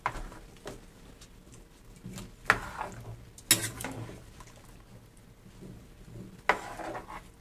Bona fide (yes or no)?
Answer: yes